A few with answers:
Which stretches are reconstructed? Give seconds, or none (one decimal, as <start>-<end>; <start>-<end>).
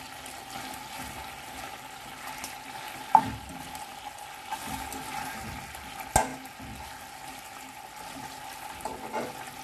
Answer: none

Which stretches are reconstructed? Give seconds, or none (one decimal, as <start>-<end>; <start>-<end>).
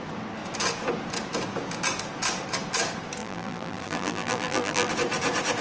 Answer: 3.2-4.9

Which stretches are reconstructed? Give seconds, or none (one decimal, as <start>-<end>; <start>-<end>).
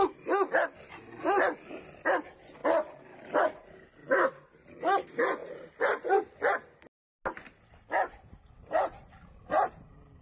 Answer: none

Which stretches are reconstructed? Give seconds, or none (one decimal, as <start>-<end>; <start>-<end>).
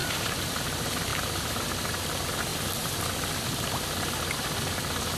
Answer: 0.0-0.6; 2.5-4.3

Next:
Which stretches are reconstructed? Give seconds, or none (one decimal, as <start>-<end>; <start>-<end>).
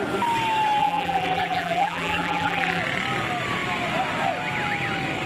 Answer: 0.8-2.8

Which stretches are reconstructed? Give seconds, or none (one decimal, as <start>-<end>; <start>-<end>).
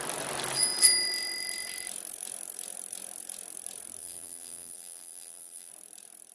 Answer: 4.0-5.7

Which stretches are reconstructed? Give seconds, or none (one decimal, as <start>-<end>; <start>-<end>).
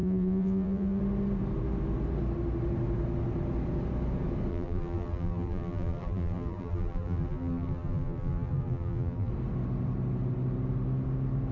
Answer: 0.0-1.0; 4.5-9.3